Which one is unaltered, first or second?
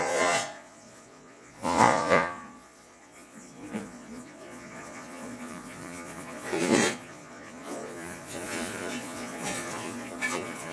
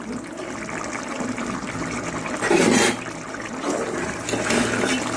second